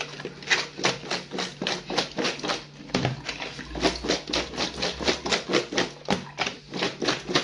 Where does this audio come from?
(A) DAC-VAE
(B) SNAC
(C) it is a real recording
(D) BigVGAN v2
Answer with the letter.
C